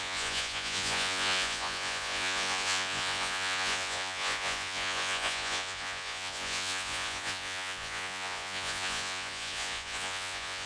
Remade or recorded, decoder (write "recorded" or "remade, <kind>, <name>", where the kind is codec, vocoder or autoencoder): remade, vocoder, Vocos